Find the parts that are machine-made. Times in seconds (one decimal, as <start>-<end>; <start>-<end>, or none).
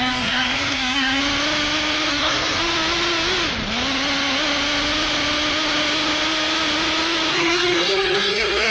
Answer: 0.0-1.2; 2.1-2.6; 7.3-8.7